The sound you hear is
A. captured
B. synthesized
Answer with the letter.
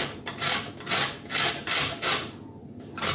A